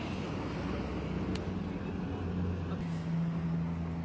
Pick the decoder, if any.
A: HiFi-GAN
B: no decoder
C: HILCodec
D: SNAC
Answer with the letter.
B